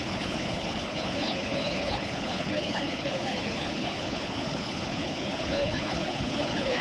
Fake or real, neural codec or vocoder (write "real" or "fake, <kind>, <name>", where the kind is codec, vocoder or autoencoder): fake, codec, HILCodec